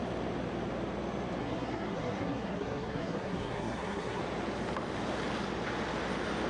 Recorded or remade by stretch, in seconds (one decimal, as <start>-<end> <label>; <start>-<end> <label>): 0.0-1.4 recorded; 1.4-4.2 remade; 4.2-6.5 recorded